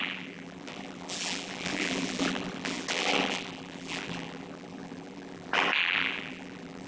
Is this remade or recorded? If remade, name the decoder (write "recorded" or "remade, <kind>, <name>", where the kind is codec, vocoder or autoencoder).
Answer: remade, vocoder, BigVGAN v2